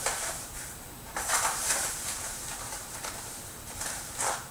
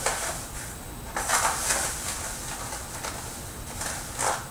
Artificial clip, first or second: first